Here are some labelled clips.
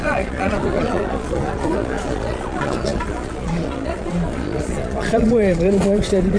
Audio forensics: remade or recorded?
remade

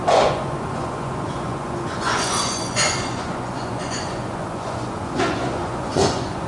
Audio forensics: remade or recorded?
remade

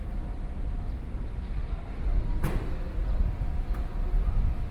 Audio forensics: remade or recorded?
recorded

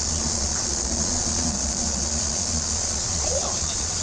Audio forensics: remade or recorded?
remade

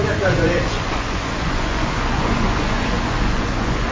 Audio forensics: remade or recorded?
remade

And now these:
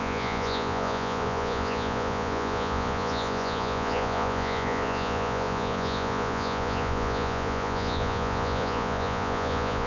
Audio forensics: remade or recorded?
remade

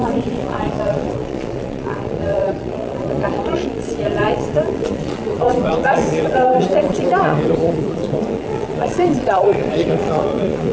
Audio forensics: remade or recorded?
remade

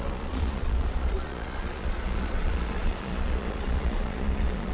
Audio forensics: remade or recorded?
remade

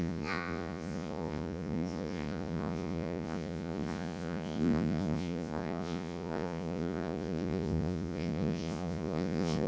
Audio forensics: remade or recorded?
remade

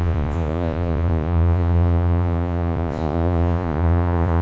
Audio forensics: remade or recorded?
remade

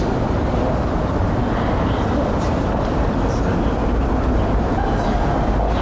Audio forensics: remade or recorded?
recorded